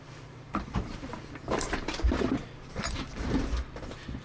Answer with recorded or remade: remade